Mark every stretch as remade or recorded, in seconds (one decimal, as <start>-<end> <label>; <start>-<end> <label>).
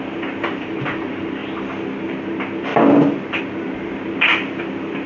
0.0-1.4 remade; 1.4-2.0 recorded; 2.0-2.7 remade; 2.7-3.4 recorded; 3.4-5.1 remade